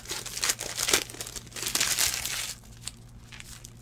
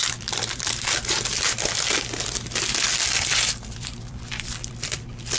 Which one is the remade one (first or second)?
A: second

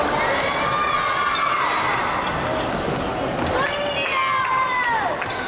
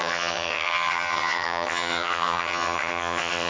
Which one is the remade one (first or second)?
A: second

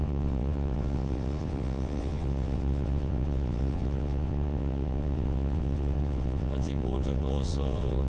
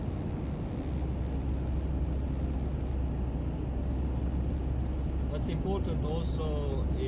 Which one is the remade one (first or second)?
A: first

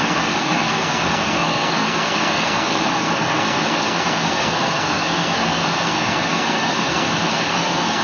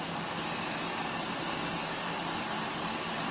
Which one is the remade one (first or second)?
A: first